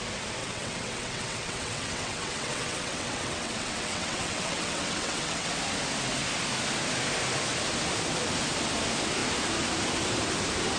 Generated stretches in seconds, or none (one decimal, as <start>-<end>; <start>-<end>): 0.4-5.5